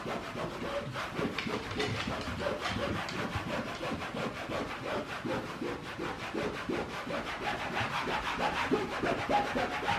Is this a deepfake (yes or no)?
yes